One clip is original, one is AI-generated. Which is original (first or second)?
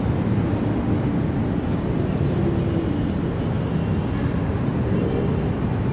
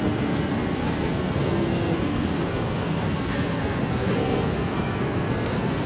first